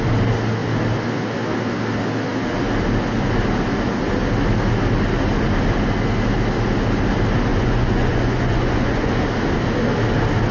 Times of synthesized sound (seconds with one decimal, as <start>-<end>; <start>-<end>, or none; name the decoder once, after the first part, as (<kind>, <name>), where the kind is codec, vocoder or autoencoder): 7.5-9.1 (vocoder, Vocos)